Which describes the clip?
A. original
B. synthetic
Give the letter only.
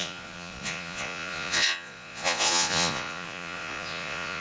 B